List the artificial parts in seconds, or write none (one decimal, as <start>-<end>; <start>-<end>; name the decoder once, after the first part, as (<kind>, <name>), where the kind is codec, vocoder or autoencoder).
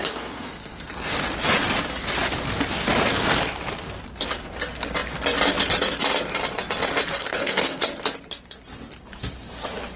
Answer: 0.0-1.1 (codec, SNAC); 7.2-7.8